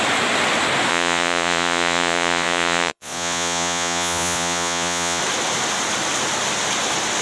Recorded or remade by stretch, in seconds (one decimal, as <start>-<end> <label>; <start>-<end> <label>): 0.0-0.9 recorded; 0.9-5.2 remade; 5.2-7.2 recorded